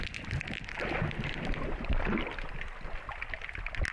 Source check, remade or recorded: recorded